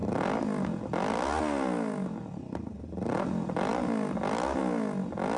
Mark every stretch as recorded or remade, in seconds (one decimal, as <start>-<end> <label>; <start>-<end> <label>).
0.0-5.4 recorded